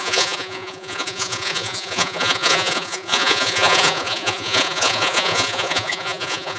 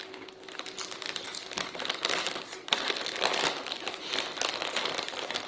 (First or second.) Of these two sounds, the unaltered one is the second